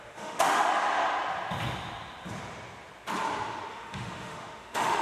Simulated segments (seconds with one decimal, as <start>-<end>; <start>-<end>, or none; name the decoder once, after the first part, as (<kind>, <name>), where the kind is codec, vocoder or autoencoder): 0.0-0.7 (autoencoder, DAC-VAE); 3.7-5.0